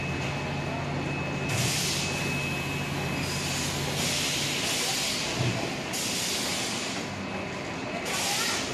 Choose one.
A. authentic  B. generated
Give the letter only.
A